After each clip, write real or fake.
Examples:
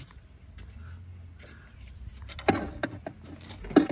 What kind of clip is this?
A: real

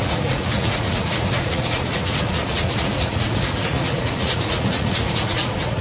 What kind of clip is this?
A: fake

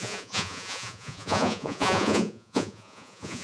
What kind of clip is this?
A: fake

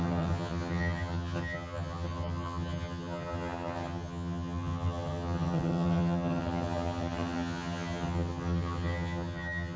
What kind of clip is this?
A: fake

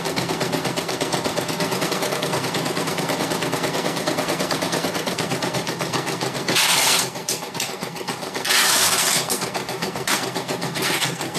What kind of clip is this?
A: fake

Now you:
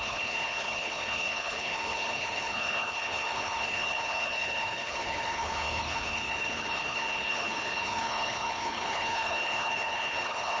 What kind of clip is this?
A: fake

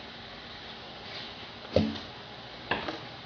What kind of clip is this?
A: real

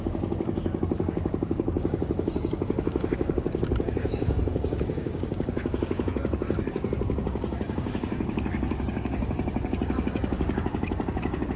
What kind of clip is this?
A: fake